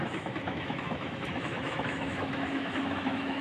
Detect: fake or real fake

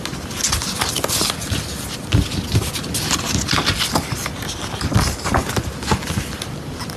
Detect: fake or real real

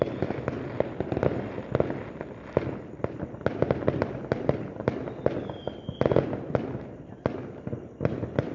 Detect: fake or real real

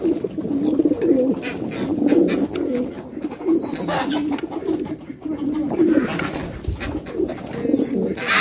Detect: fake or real real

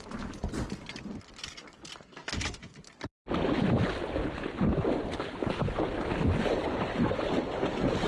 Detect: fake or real real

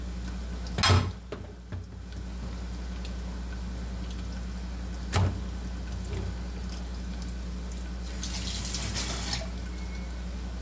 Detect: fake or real real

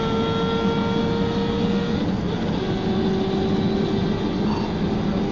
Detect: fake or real real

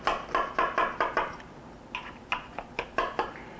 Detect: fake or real real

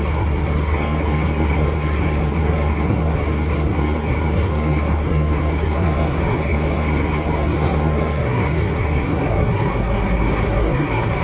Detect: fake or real fake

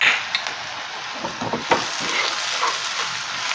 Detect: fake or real real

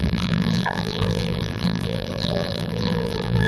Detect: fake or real fake